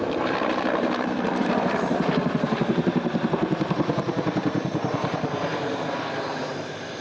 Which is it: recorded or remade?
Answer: remade